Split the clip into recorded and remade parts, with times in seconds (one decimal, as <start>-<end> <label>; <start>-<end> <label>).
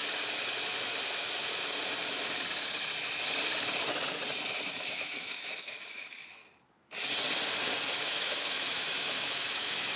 0.0-4.7 recorded; 4.7-6.4 remade; 6.4-8.0 recorded; 8.0-10.0 remade